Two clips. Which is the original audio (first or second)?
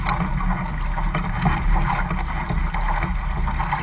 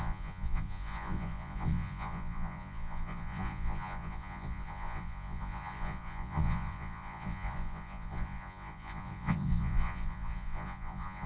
first